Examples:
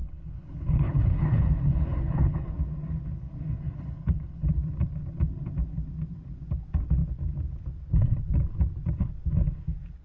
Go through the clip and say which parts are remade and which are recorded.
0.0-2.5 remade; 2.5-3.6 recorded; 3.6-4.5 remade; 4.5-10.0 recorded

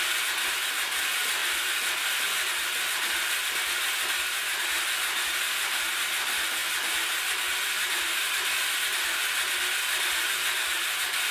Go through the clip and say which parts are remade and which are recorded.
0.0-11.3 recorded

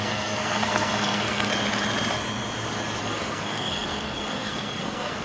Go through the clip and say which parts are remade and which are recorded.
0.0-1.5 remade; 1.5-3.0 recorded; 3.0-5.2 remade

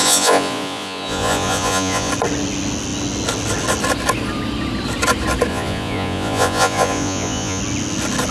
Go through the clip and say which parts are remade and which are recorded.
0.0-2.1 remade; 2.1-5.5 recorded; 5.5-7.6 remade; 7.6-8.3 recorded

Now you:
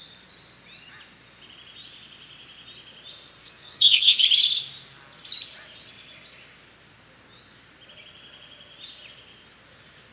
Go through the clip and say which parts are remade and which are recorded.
0.0-3.4 recorded; 3.4-4.2 remade; 4.2-10.1 recorded

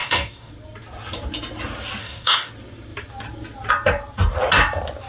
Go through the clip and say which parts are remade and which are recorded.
0.0-0.5 remade; 0.5-2.0 recorded; 2.0-2.5 remade; 2.5-5.1 recorded

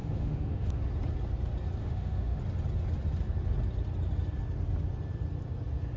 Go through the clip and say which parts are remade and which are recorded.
0.0-0.8 remade; 0.8-1.8 recorded; 1.8-2.4 remade; 2.4-6.0 recorded

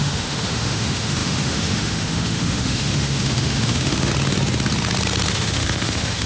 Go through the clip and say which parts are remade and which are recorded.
0.0-4.1 remade; 4.1-5.3 recorded; 5.3-6.3 remade